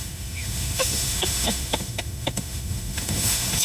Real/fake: fake